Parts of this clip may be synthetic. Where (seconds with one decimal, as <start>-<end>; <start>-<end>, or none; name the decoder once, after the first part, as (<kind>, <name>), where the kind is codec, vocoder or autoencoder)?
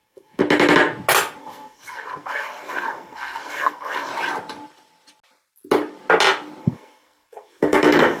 0.0-0.4 (codec, SNAC); 1.4-4.1; 6.6-8.2